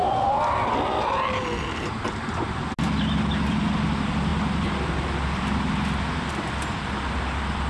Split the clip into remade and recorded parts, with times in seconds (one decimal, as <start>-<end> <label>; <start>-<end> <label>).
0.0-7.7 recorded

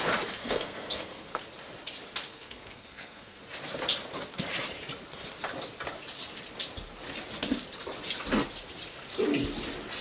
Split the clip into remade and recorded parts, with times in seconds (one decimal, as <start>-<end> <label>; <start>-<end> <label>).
0.0-0.4 recorded; 0.4-1.4 remade; 1.4-2.3 recorded; 2.3-3.4 remade; 3.4-10.0 recorded

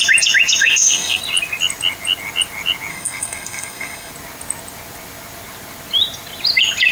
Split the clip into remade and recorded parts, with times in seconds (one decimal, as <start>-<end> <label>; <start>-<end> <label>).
0.0-0.6 recorded; 0.6-1.2 remade; 1.2-2.9 recorded; 2.9-4.1 remade; 4.1-6.9 recorded

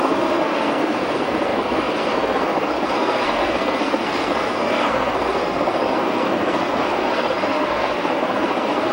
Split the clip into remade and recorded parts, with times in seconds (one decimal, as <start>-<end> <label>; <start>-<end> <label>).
0.0-8.9 remade

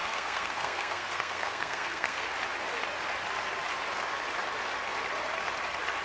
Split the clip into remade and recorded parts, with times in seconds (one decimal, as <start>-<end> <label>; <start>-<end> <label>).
0.0-2.3 remade; 2.3-6.0 recorded

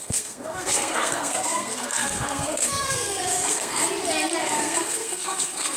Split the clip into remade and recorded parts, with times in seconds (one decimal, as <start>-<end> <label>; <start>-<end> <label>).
0.0-3.8 remade; 3.8-4.4 recorded; 4.4-5.8 remade

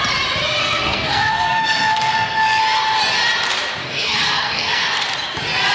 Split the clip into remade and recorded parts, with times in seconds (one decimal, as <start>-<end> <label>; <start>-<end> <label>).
0.0-0.6 recorded; 0.6-2.6 remade; 2.6-3.8 recorded; 3.8-5.0 remade; 5.0-5.7 recorded

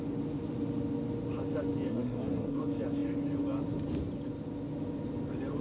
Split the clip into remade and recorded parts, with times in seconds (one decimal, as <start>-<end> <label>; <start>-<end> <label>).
0.0-1.9 recorded; 1.9-2.6 remade; 2.6-5.6 recorded